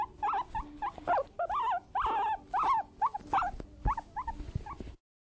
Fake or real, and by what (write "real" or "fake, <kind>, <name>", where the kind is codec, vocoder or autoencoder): real